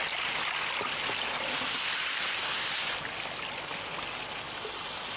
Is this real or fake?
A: real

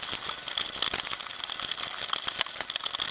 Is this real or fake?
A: real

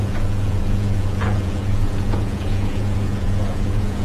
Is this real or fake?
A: fake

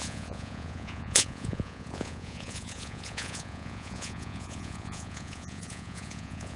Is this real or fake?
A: fake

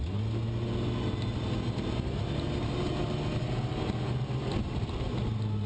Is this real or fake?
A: real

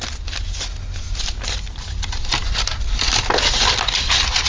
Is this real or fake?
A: real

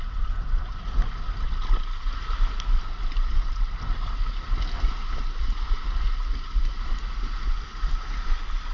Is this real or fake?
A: real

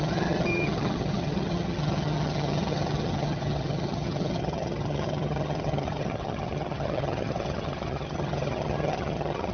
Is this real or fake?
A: fake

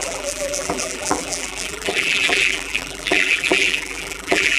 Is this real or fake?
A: fake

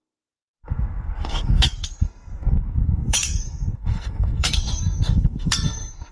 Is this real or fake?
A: fake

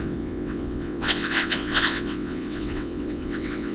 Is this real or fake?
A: fake